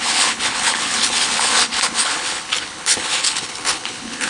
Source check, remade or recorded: remade